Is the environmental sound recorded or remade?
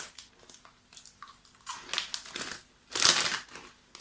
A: recorded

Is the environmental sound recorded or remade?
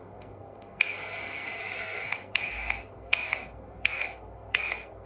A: remade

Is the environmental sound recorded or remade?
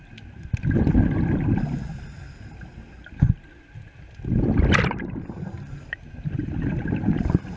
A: recorded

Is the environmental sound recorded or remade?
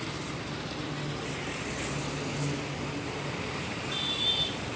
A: recorded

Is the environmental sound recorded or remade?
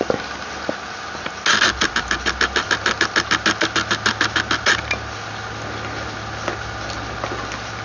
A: recorded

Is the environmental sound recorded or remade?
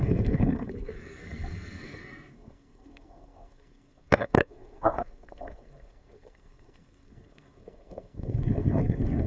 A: remade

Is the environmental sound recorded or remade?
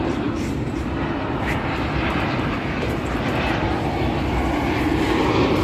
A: remade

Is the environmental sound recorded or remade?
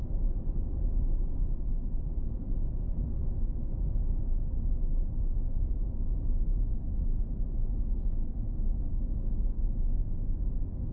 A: recorded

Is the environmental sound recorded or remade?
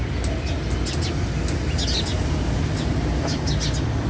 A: recorded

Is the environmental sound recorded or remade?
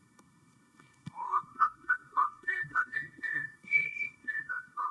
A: remade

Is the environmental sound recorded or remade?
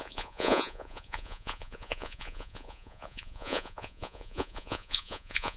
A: remade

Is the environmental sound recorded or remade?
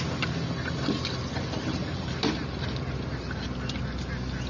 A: recorded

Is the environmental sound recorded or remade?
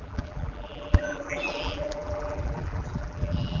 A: remade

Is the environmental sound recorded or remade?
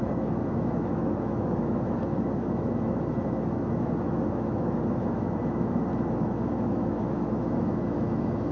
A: remade